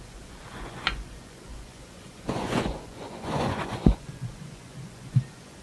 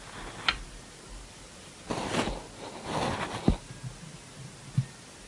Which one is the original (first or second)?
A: second